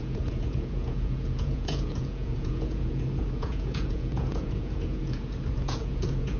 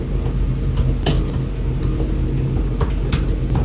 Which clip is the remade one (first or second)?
first